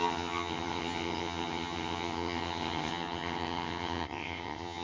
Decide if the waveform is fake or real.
fake